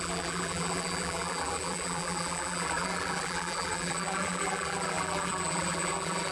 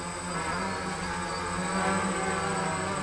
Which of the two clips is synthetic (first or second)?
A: first